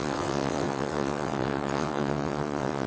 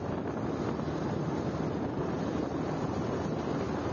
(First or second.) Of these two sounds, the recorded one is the second